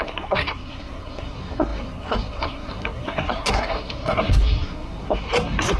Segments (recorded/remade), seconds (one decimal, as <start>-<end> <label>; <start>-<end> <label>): 0.0-5.8 remade